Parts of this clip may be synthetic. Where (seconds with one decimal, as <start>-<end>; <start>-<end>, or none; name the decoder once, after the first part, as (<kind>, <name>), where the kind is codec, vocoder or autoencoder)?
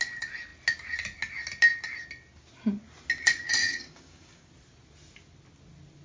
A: 3.6-4.5 (codec, DAC)